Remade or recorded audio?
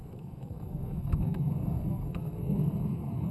remade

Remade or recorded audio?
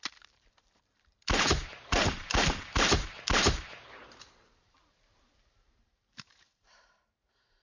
remade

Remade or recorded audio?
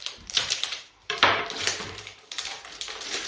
remade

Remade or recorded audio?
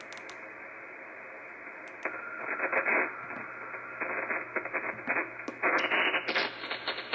recorded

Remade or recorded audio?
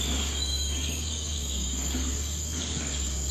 remade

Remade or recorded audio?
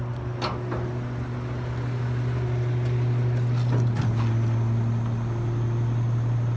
recorded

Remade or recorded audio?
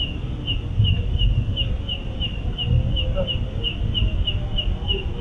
recorded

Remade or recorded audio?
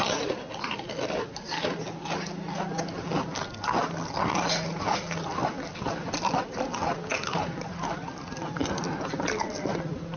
recorded